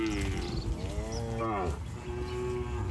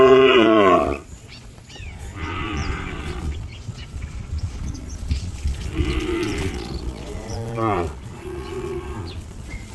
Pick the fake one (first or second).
second